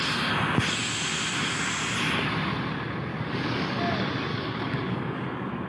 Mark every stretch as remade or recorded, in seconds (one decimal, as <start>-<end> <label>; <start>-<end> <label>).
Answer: 0.0-3.1 recorded; 3.1-3.8 remade; 3.8-4.3 recorded; 4.3-5.7 remade